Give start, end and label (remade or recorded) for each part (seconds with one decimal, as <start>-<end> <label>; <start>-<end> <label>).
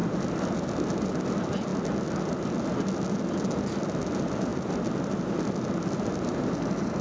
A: 0.0-7.0 recorded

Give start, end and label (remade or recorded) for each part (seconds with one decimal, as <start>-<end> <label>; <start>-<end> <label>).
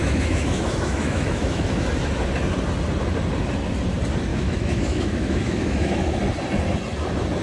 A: 0.0-1.9 remade; 1.9-4.3 recorded; 4.3-6.2 remade; 6.2-7.4 recorded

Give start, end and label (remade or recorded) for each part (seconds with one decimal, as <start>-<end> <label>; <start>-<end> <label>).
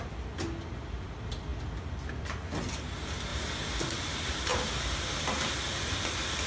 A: 0.0-6.5 recorded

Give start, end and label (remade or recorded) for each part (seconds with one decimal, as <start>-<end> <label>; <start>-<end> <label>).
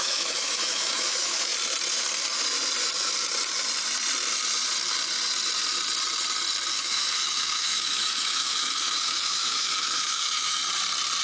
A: 0.0-1.5 remade; 1.5-6.7 recorded; 6.7-10.6 remade; 10.6-11.2 recorded